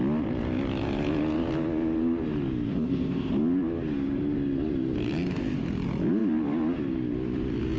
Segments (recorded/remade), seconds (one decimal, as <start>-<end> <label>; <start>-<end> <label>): 0.0-2.7 recorded; 2.7-3.3 remade; 3.3-7.8 recorded